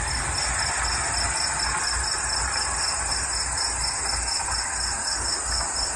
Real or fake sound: real